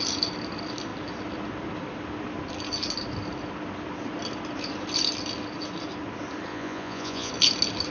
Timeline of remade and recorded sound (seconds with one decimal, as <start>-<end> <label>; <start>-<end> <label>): 0.0-6.5 recorded; 6.5-7.3 remade; 7.3-7.9 recorded